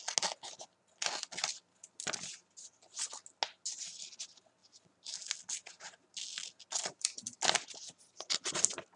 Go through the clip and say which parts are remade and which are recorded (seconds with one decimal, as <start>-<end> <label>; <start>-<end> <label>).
0.0-4.6 recorded; 4.6-5.2 remade; 5.2-9.0 recorded